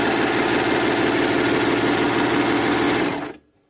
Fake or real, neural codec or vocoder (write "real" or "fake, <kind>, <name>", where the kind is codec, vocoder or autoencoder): real